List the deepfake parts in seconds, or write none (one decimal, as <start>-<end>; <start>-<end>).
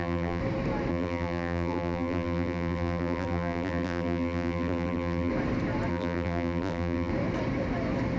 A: 0.0-0.4; 0.9-5.3; 5.9-7.1